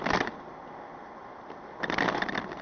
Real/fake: real